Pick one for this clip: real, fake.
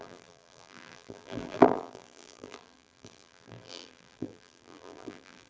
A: fake